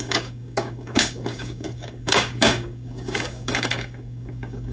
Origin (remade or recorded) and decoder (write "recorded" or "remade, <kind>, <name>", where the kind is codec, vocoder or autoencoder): remade, codec, DAC